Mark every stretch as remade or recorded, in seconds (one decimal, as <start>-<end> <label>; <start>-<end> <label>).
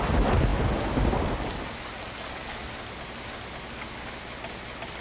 0.0-5.0 recorded